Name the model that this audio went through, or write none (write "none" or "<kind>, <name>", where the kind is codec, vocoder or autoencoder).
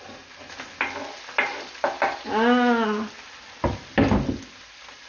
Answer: none